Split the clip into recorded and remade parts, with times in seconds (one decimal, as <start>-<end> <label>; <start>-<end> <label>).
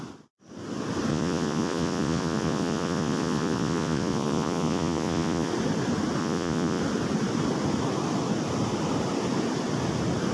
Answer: 0.0-1.1 recorded; 1.1-5.5 remade; 5.5-6.2 recorded; 6.2-6.8 remade; 6.8-10.3 recorded